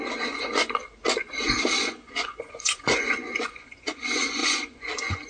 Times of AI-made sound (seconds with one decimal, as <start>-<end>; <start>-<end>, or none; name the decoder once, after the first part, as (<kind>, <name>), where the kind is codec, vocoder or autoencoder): 0.0-0.8 (vocoder, Vocos); 1.8-5.3